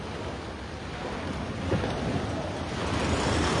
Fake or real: real